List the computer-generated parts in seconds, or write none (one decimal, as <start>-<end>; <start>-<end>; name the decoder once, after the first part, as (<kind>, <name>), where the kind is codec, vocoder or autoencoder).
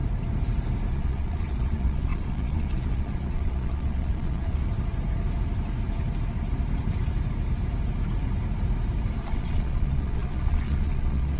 0.9-4.6 (vocoder, Vocos); 9.2-11.4